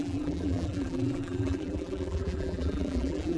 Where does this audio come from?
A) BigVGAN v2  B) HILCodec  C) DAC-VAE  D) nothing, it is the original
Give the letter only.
A